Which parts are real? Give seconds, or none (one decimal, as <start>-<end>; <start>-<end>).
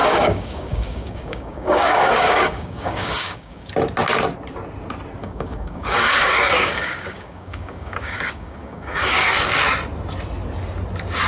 3.7-5.2; 9.5-11.3